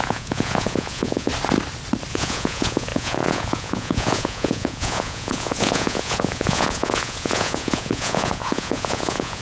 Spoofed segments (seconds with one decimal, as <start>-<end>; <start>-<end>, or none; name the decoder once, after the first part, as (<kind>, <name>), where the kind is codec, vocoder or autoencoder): 0.0-1.3 (vocoder, Vocos); 2.1-9.4

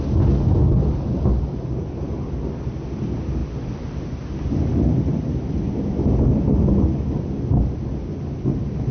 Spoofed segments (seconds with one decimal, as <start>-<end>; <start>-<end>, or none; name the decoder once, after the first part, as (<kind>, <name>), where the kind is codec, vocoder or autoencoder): none

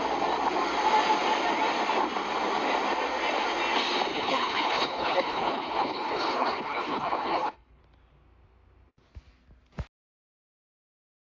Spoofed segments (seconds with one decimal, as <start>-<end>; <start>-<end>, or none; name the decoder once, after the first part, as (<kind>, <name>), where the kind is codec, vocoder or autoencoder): 4.1-7.8 (codec, HILCodec)

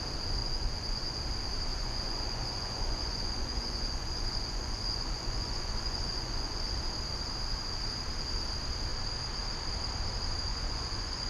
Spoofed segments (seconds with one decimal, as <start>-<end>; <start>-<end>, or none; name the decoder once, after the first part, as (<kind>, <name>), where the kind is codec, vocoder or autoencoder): 0.4-1.2 (vocoder, Vocos); 1.7-6.8; 10.5-11.3

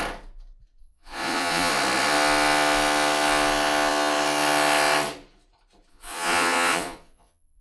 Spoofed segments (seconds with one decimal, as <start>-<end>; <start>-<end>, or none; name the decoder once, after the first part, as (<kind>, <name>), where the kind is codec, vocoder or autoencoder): 0.8-1.7 (vocoder, Vocos); 5.9-7.6

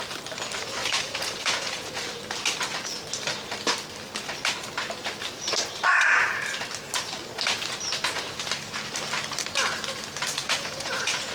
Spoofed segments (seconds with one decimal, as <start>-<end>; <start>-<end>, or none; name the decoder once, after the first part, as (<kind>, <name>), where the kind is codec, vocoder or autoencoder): 0.8-1.9 (vocoder, Vocos); 10.4-11.3